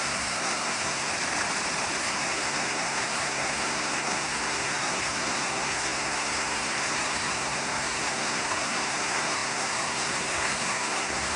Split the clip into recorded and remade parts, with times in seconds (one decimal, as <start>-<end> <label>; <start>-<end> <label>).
0.0-1.1 remade; 1.1-2.0 recorded; 2.0-11.4 remade